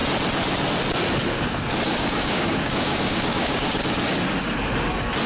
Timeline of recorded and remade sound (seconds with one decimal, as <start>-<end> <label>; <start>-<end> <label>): 0.0-1.3 recorded; 1.3-3.8 remade; 3.8-5.3 recorded